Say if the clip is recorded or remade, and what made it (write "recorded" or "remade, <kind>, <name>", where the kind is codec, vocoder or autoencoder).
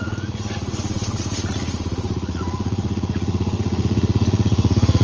remade, vocoder, Vocos